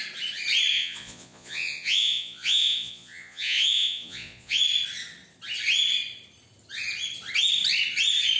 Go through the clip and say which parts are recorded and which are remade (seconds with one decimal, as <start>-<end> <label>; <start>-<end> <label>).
0.0-0.7 recorded; 0.7-4.6 remade; 4.6-8.4 recorded